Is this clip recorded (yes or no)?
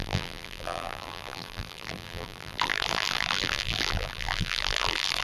no